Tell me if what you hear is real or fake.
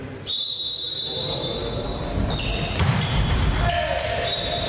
real